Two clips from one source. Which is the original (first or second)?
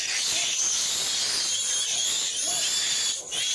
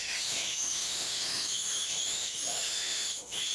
first